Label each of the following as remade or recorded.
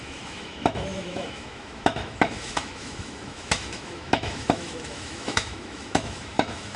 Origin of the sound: remade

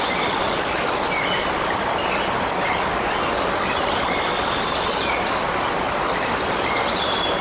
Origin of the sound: recorded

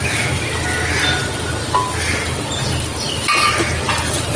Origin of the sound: recorded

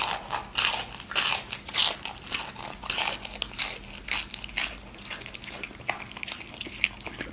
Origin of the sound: recorded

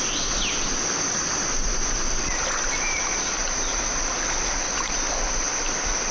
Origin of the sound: recorded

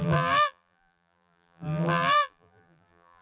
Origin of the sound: remade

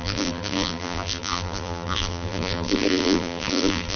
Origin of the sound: remade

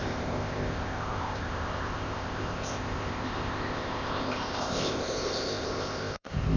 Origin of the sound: remade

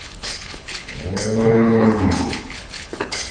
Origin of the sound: remade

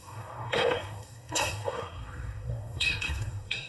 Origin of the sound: remade